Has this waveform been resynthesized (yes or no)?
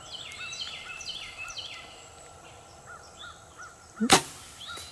yes